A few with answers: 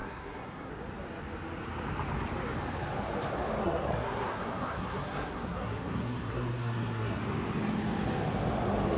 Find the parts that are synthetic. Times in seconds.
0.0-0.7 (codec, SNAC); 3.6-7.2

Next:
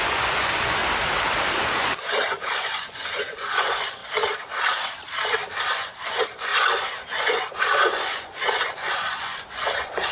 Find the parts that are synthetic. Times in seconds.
0.0-0.8 (vocoder, Vocos); 1.6-4.0; 5.7-10.1

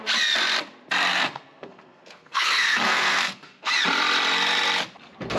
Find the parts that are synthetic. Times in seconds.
1.1-3.7 (codec, SNAC)

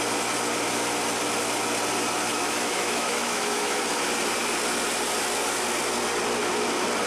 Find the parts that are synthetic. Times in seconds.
2.3-3.8 (autoencoder, DAC-VAE)

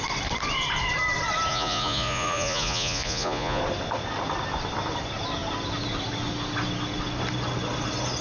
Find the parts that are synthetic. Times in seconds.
1.5-3.6 (vocoder, Vocos)

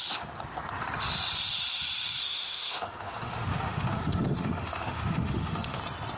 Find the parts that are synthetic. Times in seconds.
2.2-5.8 (autoencoder, DAC-VAE)

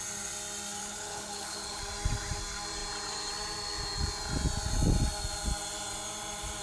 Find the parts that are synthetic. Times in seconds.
0.8-1.8 (codec, HILCodec)

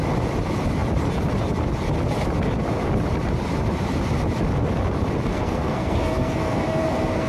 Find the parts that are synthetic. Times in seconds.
5.3-7.3 (codec, SNAC)